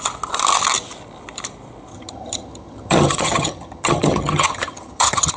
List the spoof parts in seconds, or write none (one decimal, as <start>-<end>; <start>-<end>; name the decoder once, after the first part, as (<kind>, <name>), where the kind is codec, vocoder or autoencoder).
1.9-5.4 (vocoder, HiFi-GAN)

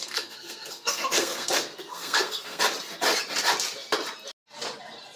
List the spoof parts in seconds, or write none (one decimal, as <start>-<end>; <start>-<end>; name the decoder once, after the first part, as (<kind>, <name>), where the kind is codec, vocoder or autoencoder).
0.0-2.6 (codec, SNAC)